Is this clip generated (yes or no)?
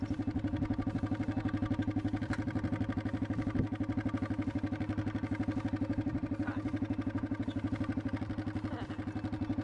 no